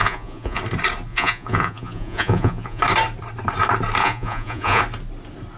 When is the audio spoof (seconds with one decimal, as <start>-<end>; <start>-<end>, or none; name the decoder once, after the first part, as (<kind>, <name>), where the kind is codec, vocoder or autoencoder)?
0.0-0.6 (vocoder, Vocos); 1.1-2.8; 4.0-4.8